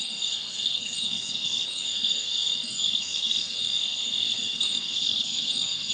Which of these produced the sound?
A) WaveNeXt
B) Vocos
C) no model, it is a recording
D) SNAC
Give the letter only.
D